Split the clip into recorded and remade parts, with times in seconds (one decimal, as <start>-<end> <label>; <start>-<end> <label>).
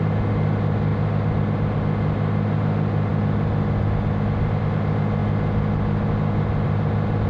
0.0-7.3 recorded